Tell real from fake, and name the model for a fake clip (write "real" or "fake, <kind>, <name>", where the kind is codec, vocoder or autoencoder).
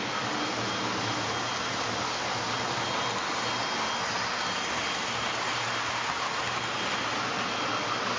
real